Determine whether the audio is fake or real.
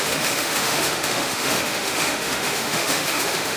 fake